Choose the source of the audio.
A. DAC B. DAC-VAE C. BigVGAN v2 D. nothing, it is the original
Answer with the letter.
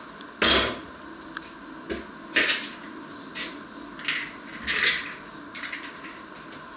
D